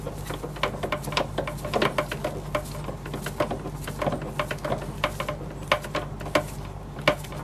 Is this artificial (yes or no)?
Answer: no